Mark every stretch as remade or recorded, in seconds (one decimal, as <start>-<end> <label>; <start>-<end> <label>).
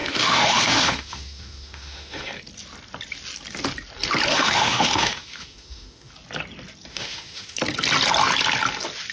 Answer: 0.0-2.4 remade; 2.4-4.3 recorded; 4.3-6.1 remade; 6.1-6.9 recorded; 6.9-7.6 remade; 7.6-9.1 recorded